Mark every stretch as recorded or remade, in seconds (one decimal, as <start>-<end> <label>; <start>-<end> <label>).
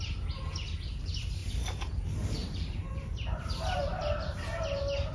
0.0-2.4 recorded; 2.4-4.0 remade; 4.0-5.1 recorded